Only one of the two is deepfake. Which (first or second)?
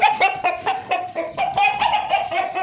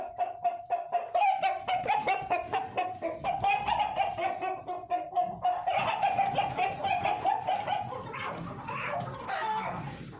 first